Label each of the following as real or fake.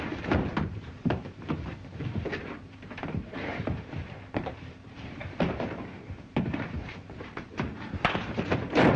fake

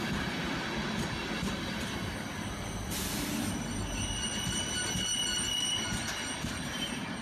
real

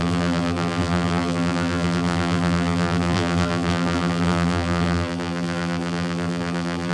fake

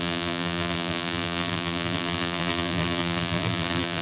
fake